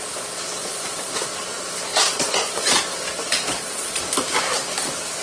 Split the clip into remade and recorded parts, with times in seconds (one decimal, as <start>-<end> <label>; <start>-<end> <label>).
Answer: 0.0-0.6 recorded; 0.6-1.1 remade; 1.1-1.9 recorded; 1.9-2.8 remade; 2.8-3.5 recorded; 3.5-4.0 remade; 4.0-5.2 recorded